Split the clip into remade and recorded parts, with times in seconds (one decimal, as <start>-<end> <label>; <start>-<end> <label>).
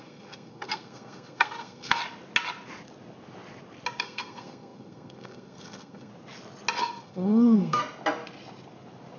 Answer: 0.0-2.0 remade; 2.0-4.0 recorded; 4.0-6.1 remade; 6.1-6.8 recorded; 6.8-7.8 remade; 7.8-9.2 recorded